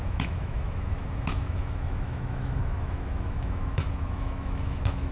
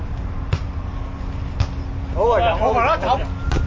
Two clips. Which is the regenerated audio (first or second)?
first